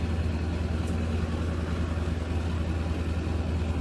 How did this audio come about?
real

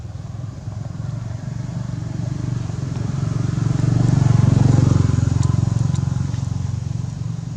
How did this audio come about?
real